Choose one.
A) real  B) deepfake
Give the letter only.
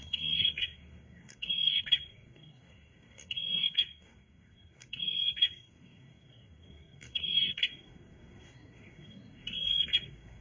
B